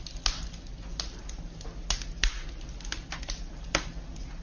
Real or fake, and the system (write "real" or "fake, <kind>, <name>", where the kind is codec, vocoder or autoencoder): real